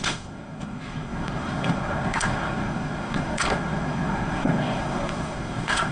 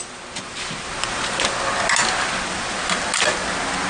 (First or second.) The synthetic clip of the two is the first